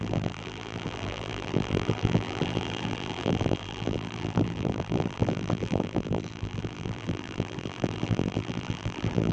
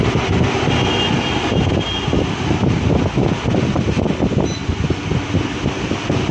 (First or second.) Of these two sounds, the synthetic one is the first